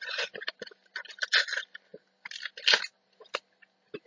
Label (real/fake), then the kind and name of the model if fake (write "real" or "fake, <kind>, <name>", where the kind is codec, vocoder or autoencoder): real